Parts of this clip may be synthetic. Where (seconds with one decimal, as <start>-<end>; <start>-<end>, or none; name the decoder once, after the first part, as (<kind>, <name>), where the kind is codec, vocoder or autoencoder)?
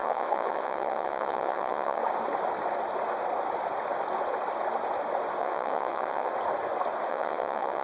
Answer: 0.0-2.0 (vocoder, WaveNeXt); 5.4-6.3; 7.1-7.8